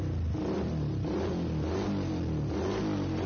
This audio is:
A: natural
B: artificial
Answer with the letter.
A